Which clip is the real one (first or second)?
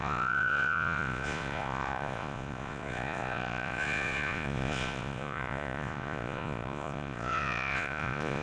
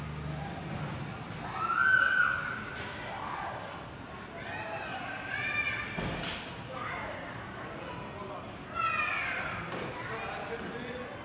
second